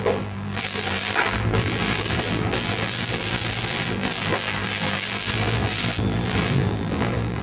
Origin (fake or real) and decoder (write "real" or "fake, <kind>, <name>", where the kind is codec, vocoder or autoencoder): fake, vocoder, BigVGAN v2